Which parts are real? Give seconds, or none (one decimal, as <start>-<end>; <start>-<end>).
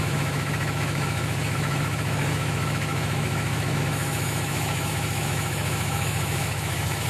none